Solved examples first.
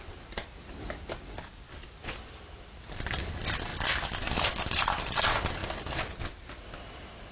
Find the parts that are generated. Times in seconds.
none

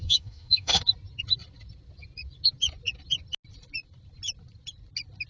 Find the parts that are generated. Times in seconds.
0.0-0.8 (autoencoder, DAC-VAE)

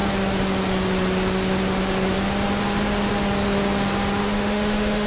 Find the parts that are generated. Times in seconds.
4.2-5.1 (autoencoder, DAC-VAE)

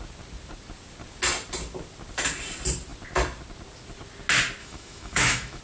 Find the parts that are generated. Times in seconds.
4.6-5.6 (autoencoder, DAC-VAE)